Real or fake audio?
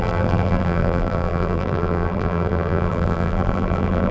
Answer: fake